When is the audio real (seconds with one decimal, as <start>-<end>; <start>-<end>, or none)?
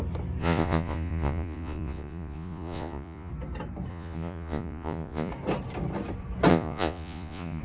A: 0.0-0.4; 3.3-3.9; 5.3-6.5